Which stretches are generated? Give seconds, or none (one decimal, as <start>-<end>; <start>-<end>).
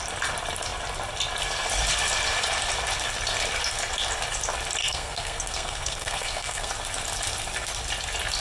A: 4.8-6.7